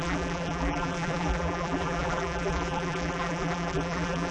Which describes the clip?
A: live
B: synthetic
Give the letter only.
B